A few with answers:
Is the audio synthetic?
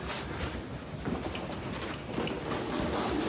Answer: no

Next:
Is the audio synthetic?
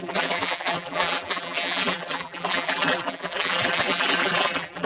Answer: yes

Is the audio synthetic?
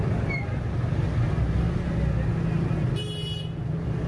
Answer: no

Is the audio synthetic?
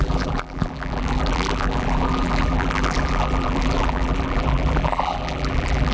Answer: yes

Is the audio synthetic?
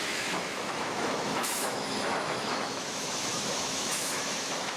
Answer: yes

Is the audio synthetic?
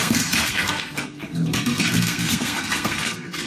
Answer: yes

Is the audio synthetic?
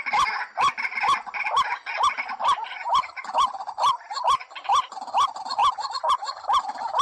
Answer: no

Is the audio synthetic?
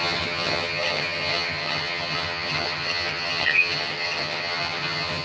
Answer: yes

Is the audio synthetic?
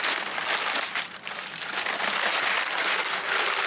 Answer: no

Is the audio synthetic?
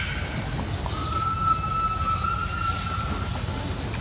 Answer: no